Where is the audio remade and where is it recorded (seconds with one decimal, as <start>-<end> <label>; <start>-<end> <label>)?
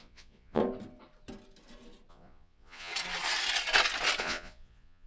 0.0-0.6 remade; 0.6-2.1 recorded; 2.1-2.9 remade; 2.9-4.2 recorded; 4.2-5.1 remade